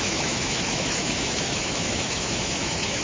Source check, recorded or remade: remade